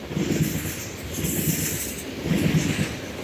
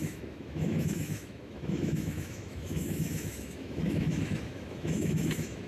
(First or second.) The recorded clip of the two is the first